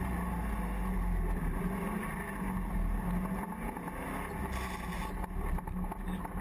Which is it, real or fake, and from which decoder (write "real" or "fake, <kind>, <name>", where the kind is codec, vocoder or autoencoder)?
real